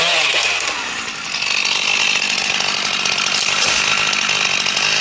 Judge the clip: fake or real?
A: real